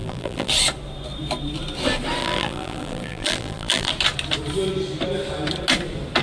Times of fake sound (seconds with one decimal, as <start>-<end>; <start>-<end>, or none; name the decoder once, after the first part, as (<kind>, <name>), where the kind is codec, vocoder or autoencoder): 0.0-0.5 (vocoder, BigVGAN v2); 2.2-3.9